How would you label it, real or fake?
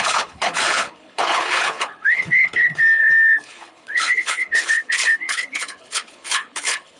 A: fake